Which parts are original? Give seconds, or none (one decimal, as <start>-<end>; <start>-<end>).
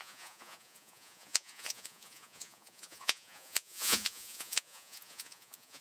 none